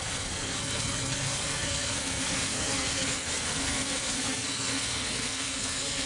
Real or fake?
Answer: fake